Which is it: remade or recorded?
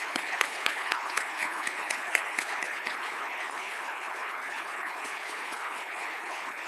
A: remade